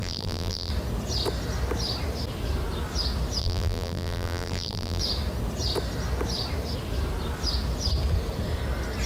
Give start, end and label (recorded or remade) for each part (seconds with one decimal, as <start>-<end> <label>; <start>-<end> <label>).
0.0-0.7 remade; 0.7-3.4 recorded; 3.4-5.0 remade; 5.0-9.1 recorded